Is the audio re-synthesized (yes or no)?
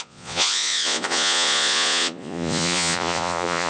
yes